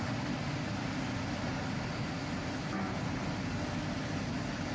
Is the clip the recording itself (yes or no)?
yes